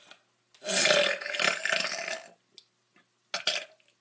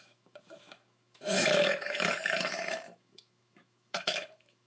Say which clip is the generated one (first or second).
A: second